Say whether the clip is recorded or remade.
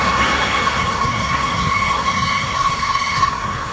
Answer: remade